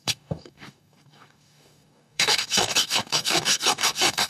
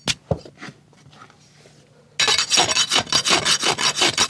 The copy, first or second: first